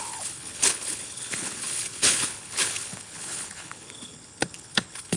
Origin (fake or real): fake